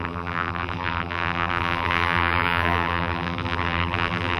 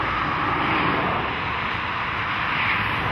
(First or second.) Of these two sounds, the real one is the second